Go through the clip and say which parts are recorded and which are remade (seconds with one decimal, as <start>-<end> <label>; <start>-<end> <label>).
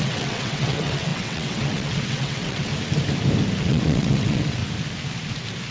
0.0-2.7 remade; 2.7-3.6 recorded; 3.6-4.6 remade; 4.6-5.7 recorded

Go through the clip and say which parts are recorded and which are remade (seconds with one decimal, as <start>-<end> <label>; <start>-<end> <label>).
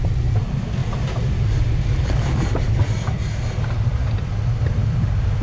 0.0-0.8 recorded; 0.8-4.0 remade; 4.0-5.4 recorded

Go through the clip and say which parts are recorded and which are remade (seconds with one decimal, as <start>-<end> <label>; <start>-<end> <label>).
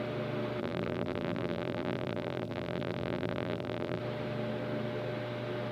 0.0-0.6 recorded; 0.6-4.0 remade; 4.0-5.7 recorded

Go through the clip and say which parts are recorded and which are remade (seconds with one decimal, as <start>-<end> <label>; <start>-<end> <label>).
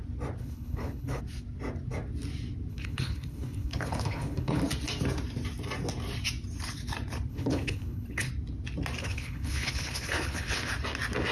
0.0-0.4 recorded; 0.4-1.2 remade; 1.2-2.7 recorded; 2.7-4.6 remade; 4.6-7.3 recorded; 7.3-8.3 remade; 8.3-9.0 recorded; 9.0-10.7 remade; 10.7-11.3 recorded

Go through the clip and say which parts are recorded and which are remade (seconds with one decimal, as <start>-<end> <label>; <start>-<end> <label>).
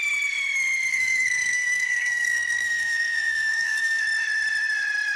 0.0-0.9 recorded; 0.9-4.0 remade; 4.0-5.2 recorded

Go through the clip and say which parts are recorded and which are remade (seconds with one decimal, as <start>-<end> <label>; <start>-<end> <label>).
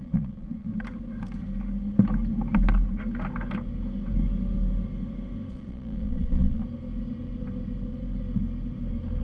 0.0-0.7 remade; 0.7-5.5 recorded; 5.5-6.6 remade; 6.6-9.2 recorded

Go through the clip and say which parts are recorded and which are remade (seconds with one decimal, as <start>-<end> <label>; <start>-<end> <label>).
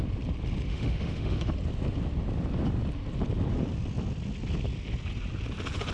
0.0-0.7 recorded; 0.7-1.5 remade; 1.5-5.9 recorded